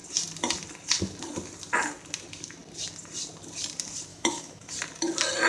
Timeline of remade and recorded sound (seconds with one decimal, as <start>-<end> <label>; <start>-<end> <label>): 0.0-4.1 recorded; 4.1-4.7 remade; 4.7-5.5 recorded